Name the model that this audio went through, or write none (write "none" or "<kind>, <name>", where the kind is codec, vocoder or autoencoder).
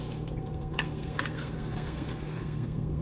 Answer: codec, SNAC